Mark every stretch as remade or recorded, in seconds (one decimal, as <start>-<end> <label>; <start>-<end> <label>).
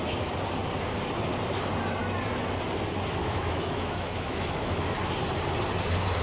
0.0-3.2 recorded; 3.2-4.9 remade; 4.9-6.2 recorded